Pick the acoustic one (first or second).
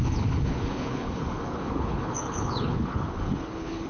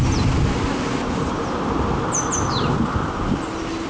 second